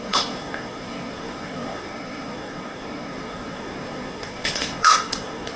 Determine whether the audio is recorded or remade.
remade